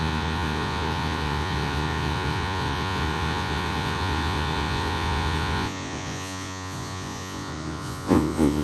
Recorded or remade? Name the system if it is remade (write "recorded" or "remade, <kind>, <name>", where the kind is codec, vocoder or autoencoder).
remade, vocoder, Vocos